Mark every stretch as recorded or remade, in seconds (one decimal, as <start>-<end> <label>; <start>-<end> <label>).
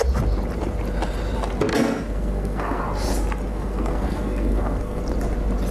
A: 0.0-1.7 recorded; 1.7-2.8 remade; 2.8-3.5 recorded; 3.5-5.0 remade; 5.0-5.7 recorded